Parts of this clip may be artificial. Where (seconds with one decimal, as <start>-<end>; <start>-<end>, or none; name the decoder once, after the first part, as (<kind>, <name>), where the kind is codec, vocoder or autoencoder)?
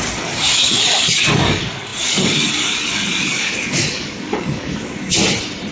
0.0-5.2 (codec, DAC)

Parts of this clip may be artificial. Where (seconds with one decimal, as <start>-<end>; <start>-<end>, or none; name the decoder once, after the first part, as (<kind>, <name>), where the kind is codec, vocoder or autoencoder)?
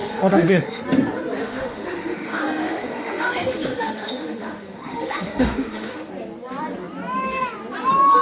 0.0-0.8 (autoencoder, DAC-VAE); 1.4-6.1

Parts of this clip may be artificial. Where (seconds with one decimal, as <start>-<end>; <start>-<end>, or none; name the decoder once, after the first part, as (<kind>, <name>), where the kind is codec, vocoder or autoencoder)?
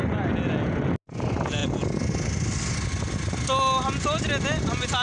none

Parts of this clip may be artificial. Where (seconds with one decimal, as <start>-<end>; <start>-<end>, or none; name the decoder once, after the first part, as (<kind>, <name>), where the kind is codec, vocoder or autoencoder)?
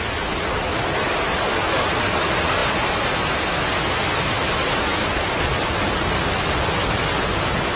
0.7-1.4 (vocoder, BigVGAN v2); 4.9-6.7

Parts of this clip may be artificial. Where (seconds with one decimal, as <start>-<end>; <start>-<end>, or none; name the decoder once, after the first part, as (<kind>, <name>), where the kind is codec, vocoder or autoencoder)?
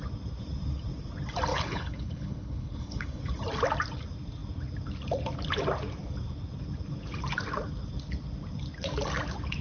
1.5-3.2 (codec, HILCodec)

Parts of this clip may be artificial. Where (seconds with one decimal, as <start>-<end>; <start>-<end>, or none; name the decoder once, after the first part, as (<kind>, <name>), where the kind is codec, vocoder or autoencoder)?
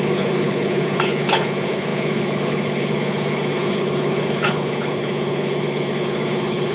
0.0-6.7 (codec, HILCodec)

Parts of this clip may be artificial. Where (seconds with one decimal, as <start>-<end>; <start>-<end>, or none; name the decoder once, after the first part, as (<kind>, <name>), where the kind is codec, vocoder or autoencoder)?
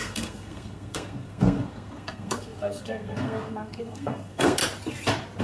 0.0-4.6 (codec, SNAC)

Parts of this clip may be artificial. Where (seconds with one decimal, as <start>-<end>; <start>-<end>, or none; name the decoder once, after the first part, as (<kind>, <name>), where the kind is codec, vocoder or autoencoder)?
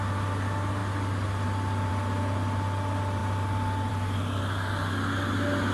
none